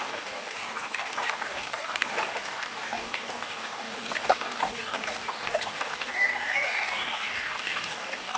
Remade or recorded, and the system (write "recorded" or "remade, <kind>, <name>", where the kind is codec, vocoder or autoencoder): remade, codec, DAC